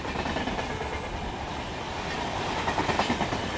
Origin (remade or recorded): recorded